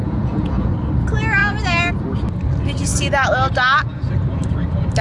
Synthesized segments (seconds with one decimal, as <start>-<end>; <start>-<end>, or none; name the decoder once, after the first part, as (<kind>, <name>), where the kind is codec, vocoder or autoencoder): 0.0-0.7 (vocoder, Vocos)

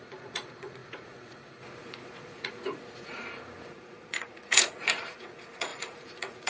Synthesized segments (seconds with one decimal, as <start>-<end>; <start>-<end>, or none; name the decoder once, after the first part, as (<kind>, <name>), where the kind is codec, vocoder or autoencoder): 0.0-6.5 (vocoder, Vocos)

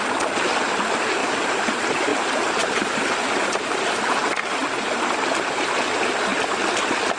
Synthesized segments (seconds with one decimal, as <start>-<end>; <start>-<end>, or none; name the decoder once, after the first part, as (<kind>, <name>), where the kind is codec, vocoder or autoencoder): 1.2-1.7 (vocoder, BigVGAN v2); 2.1-4.0

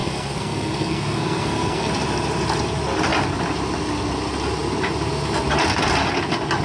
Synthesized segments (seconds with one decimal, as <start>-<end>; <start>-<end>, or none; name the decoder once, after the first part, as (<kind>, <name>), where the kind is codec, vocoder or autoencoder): 0.0-1.9 (codec, SNAC)

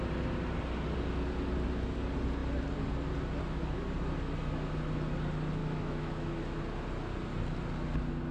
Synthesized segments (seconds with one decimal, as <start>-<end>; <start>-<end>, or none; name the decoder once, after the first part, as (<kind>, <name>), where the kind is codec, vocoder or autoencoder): 5.6-6.4 (autoencoder, DAC-VAE)

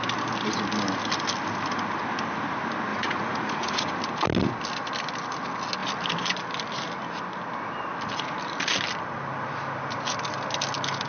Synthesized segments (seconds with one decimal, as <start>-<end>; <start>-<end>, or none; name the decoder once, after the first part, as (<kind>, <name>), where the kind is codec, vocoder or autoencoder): 2.9-3.9 (vocoder, Vocos)

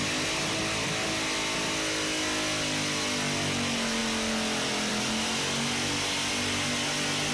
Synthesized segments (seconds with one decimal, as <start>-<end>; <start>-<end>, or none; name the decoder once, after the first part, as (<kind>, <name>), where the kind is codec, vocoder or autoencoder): none